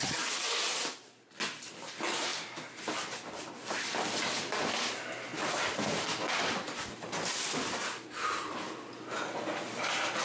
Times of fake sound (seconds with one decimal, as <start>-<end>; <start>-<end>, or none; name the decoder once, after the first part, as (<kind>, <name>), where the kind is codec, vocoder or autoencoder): none